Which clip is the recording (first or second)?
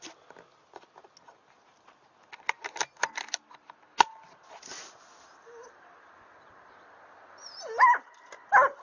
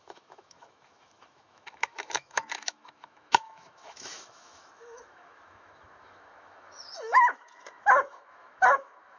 first